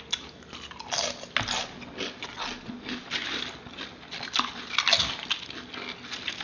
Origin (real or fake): real